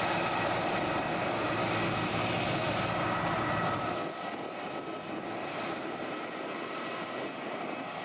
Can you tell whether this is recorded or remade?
recorded